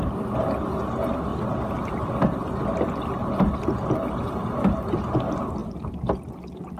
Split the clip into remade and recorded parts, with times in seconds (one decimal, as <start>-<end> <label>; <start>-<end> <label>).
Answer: 0.0-1.3 recorded; 1.3-3.0 remade; 3.0-6.8 recorded